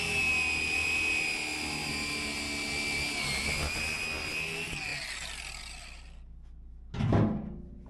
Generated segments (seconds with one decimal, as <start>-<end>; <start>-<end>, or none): none